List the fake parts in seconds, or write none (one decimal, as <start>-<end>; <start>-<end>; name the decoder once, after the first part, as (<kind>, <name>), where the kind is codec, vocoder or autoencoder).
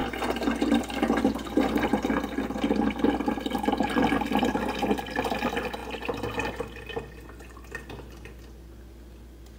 0.0-0.8 (vocoder, BigVGAN v2)